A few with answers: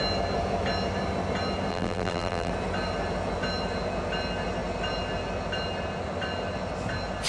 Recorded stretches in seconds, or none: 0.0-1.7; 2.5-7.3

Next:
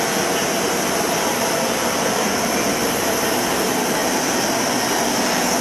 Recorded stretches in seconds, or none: 0.0-0.4; 1.5-2.8; 3.4-5.6

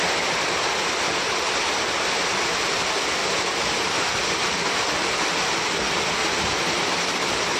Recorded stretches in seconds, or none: 0.0-6.2; 6.7-7.6